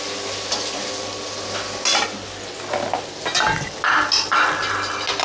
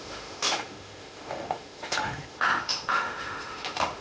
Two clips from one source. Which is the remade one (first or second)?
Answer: second